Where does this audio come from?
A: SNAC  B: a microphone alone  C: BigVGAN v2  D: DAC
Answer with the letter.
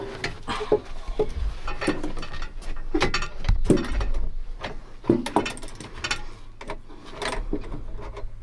B